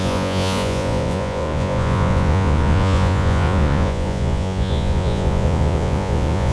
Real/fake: fake